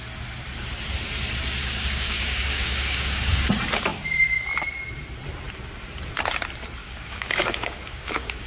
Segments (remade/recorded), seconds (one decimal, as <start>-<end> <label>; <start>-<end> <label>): 0.0-1.6 recorded; 1.6-3.4 remade; 3.4-6.8 recorded; 6.8-8.5 remade